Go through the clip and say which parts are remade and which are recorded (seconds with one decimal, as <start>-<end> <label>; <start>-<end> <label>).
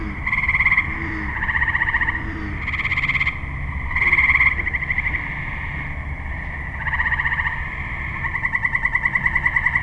0.0-9.8 recorded